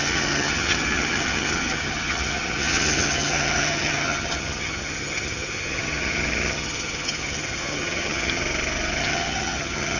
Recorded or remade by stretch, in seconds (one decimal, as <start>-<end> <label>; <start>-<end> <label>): 0.0-8.4 remade; 8.4-9.0 recorded; 9.0-10.0 remade